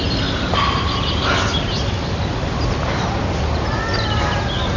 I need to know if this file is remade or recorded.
recorded